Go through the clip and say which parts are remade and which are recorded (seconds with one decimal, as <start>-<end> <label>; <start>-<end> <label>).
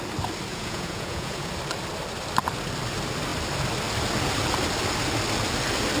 0.0-0.5 recorded; 0.5-1.5 remade; 1.5-6.0 recorded